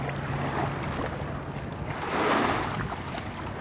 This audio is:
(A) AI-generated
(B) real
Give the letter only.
B